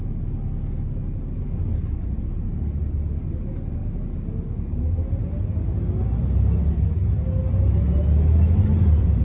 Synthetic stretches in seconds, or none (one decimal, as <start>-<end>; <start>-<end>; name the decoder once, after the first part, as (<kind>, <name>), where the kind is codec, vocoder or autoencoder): none